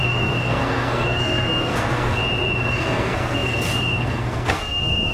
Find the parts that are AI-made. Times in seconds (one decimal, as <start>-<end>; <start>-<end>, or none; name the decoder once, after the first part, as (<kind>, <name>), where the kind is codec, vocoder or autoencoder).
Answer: 0.0-2.2 (codec, SNAC); 2.8-5.1

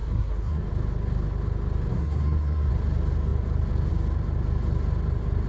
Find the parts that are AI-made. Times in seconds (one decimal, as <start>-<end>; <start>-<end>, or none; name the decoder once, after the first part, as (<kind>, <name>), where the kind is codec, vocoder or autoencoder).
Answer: 0.0-0.6 (codec, SNAC); 1.9-2.7